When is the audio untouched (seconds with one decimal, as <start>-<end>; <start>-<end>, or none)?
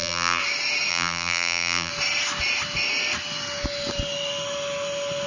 0.4-0.9; 1.9-5.3